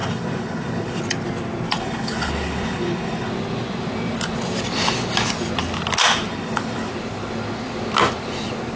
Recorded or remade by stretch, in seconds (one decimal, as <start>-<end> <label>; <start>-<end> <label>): 0.0-1.0 remade; 1.0-1.8 recorded; 1.8-3.3 remade; 3.3-6.3 recorded; 6.3-6.9 remade; 6.9-8.8 recorded